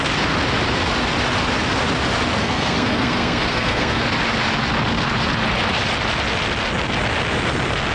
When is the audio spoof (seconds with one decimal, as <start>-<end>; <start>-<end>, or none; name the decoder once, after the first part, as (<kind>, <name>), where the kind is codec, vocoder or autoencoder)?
2.4-4.0 (codec, SNAC)